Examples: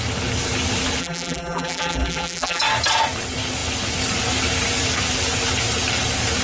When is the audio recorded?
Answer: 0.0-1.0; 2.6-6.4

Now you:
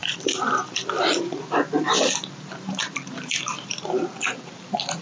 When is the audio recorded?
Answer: 1.2-2.6; 3.8-5.0

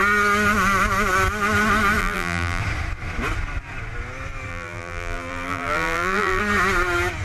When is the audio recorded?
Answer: 0.0-2.0; 2.6-4.5; 6.4-7.2

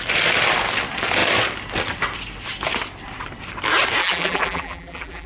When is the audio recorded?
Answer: 0.0-4.0

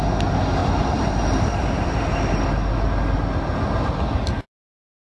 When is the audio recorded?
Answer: 0.0-0.6; 2.4-5.0